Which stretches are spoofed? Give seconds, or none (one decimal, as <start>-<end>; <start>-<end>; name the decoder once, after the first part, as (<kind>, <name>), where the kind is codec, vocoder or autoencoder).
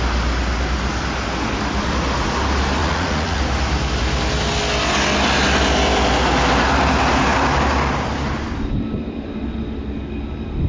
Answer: 2.8-3.4 (vocoder, Vocos)